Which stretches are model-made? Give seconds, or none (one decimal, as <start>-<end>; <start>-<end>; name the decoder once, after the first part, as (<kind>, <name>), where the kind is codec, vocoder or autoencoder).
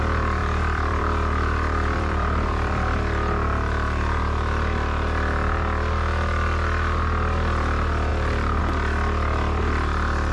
0.4-4.2 (vocoder, BigVGAN v2)